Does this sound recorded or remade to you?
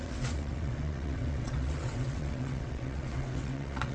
remade